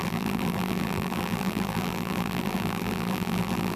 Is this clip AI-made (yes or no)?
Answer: yes